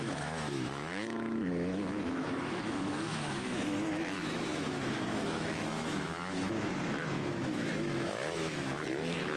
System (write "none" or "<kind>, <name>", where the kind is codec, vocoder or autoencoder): autoencoder, DAC-VAE